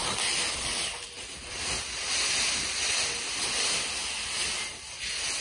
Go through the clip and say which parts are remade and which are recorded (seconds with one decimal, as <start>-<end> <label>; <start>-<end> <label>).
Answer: 0.0-5.4 recorded